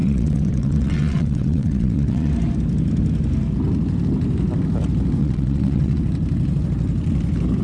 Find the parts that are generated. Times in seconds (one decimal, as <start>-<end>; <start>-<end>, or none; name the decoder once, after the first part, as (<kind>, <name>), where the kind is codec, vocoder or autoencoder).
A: 0.0-2.3 (vocoder, WaveNeXt); 5.2-6.0